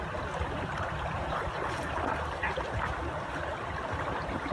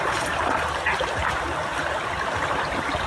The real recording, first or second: second